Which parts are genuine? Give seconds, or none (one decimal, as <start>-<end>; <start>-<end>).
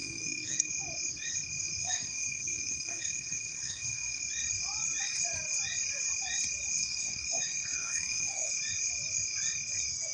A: 0.7-1.8; 4.2-6.8; 8.5-10.1